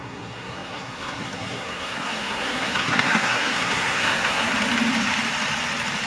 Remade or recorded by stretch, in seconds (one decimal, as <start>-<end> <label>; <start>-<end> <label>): 0.0-4.5 remade; 4.5-6.1 recorded